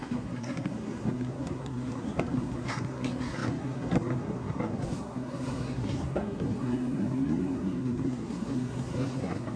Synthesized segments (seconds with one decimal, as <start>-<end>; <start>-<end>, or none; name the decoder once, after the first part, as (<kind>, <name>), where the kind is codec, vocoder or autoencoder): 0.0-9.6 (codec, SNAC)